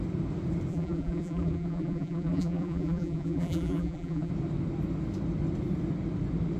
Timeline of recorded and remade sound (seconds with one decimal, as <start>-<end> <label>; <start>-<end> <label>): 0.0-0.7 recorded; 0.7-4.3 remade; 4.3-6.6 recorded